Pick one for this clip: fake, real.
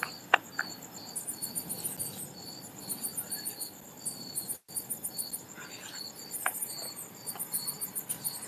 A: real